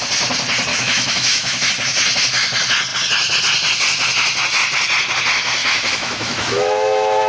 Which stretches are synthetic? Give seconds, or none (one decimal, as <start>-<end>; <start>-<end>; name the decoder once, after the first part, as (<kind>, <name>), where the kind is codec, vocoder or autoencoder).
0.7-1.7 (autoencoder, DAC-VAE); 5.6-7.3